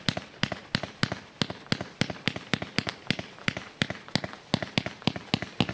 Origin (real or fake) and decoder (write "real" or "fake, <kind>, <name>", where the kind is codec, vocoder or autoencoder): real